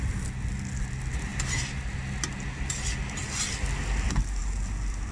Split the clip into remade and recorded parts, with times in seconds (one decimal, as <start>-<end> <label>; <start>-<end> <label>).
0.0-5.1 recorded